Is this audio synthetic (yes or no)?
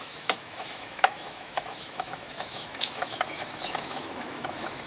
yes